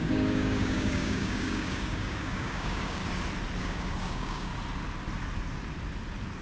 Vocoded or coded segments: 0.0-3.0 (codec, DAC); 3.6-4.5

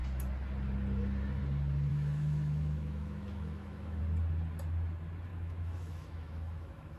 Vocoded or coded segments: 1.9-4.0 (autoencoder, DAC-VAE); 5.3-7.0

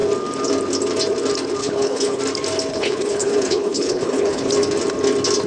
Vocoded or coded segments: 1.6-2.2 (codec, HILCodec); 2.7-4.5

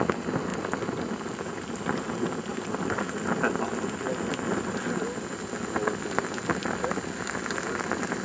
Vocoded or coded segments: none